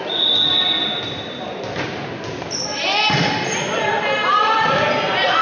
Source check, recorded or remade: recorded